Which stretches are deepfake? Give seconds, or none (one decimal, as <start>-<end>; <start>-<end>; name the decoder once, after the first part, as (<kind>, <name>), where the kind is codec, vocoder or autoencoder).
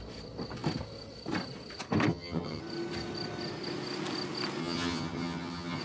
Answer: 2.1-2.6 (vocoder, HiFi-GAN); 4.6-5.8